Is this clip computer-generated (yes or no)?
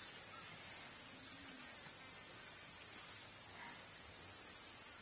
no